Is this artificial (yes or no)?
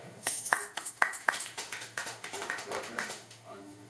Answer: yes